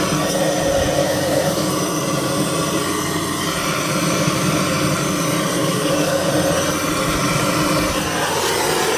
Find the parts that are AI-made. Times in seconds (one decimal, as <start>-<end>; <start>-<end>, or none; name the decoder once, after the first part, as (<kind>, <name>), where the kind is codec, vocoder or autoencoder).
1.0-1.7 (codec, DAC); 5.6-6.3